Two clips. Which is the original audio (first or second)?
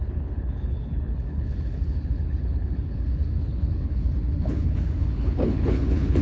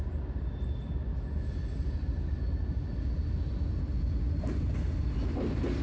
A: second